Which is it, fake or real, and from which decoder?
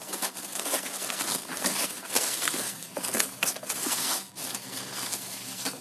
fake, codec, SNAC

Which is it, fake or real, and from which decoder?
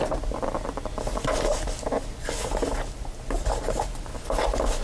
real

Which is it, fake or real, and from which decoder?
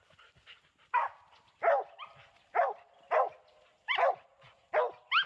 real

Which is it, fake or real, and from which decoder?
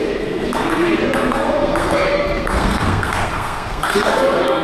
fake, codec, SNAC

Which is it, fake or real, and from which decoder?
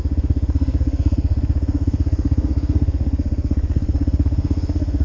fake, codec, SNAC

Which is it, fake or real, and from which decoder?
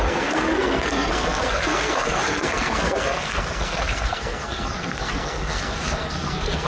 fake, codec, SNAC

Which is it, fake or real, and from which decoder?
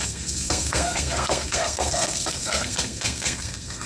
fake, codec, SNAC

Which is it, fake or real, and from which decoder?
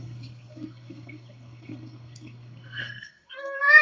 fake, codec, SNAC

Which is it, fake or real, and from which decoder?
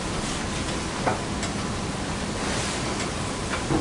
real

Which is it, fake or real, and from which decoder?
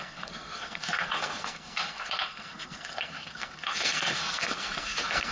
fake, codec, SNAC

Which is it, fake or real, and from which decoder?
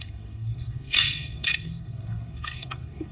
fake, codec, SNAC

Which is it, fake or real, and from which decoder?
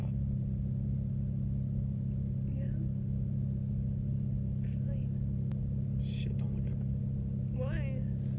real